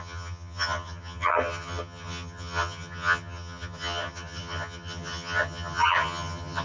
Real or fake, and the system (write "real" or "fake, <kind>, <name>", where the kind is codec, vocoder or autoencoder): fake, vocoder, HiFi-GAN